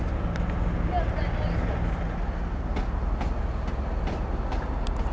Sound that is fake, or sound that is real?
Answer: real